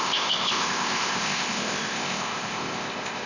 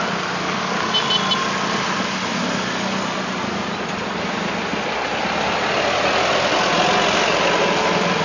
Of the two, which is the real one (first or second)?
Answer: second